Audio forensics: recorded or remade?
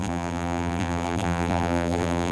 remade